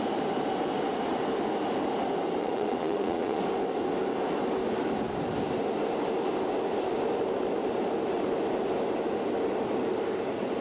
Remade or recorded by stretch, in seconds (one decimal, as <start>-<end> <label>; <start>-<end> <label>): 0.0-2.4 recorded; 2.4-3.4 remade; 3.4-10.6 recorded